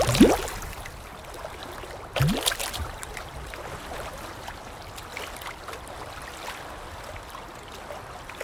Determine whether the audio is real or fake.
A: real